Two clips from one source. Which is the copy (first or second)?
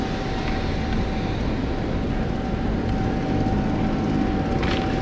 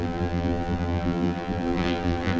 second